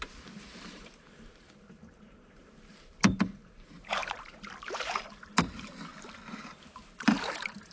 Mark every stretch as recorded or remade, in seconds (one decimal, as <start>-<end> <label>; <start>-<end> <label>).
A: 0.0-5.9 remade; 5.9-6.6 recorded; 6.6-7.7 remade